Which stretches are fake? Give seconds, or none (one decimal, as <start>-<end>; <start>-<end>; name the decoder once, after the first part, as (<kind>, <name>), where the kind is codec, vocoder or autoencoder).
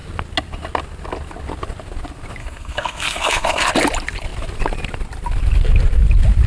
2.4-3.7 (codec, SNAC)